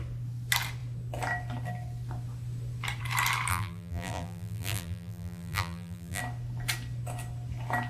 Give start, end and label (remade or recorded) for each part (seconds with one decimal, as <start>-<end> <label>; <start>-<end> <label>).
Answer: 0.0-3.5 recorded; 3.5-6.2 remade; 6.2-7.9 recorded